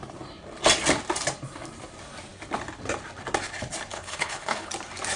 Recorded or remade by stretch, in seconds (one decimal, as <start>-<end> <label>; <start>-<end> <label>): 0.0-3.9 recorded; 3.9-4.7 remade; 4.7-5.2 recorded